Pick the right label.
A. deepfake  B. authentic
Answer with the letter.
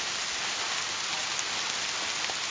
B